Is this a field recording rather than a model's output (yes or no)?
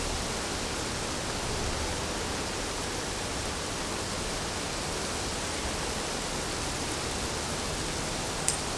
yes